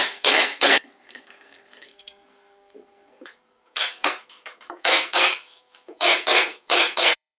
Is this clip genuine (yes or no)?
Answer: no